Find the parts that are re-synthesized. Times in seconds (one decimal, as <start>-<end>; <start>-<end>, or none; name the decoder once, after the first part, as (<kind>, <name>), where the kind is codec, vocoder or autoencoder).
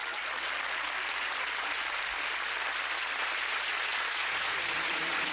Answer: none